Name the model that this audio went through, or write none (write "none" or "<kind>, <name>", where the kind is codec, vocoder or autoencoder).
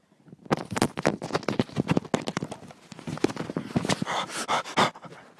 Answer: none